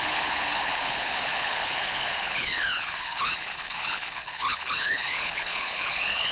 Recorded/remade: remade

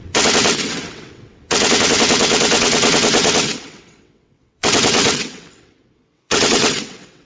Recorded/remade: remade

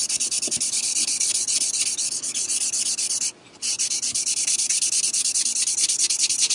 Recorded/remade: recorded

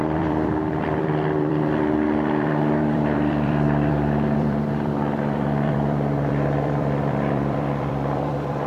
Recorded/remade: remade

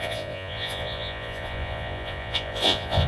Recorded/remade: remade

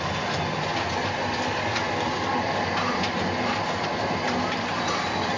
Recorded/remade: recorded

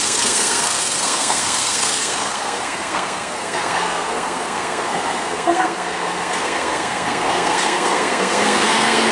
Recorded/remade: remade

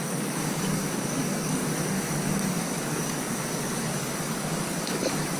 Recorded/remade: remade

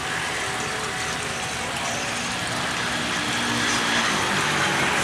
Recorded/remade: recorded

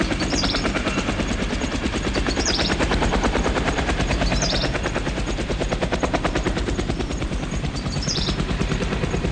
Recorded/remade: remade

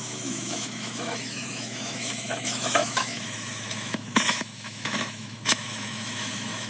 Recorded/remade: remade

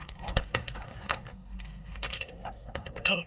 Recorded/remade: remade